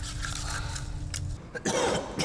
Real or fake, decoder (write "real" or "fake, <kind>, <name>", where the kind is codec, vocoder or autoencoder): real